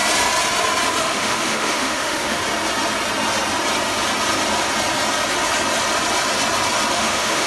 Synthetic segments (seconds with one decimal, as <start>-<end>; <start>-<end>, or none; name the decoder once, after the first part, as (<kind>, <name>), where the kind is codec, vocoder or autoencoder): 1.0-2.4 (autoencoder, DAC-VAE); 6.9-7.5